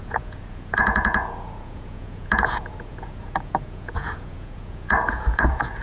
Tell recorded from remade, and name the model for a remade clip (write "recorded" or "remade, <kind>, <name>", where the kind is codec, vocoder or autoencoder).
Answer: remade, vocoder, Vocos